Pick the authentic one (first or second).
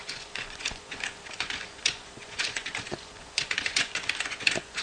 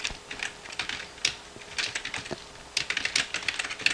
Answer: second